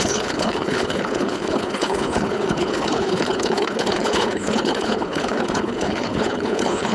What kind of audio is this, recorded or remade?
remade